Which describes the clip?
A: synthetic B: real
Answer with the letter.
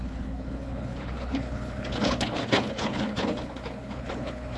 A